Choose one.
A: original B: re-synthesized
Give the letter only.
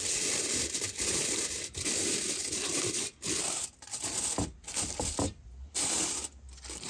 A